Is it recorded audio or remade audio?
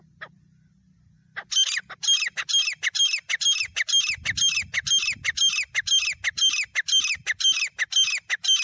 recorded